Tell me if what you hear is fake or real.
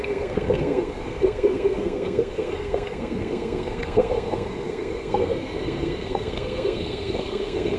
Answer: fake